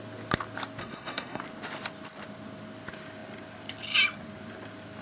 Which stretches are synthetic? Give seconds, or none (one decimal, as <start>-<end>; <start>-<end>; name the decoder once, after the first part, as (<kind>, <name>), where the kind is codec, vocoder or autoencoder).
0.8-1.4 (codec, SNAC)